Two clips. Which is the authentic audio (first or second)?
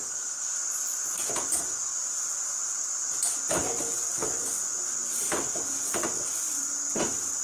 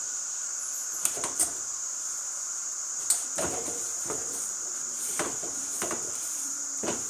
first